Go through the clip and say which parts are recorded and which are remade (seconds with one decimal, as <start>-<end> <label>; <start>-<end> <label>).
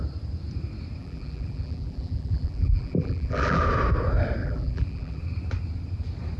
0.0-1.0 recorded; 1.0-3.6 remade; 3.6-4.4 recorded; 4.4-5.2 remade; 5.2-6.4 recorded